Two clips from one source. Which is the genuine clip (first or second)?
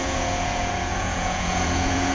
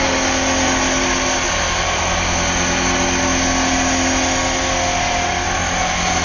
second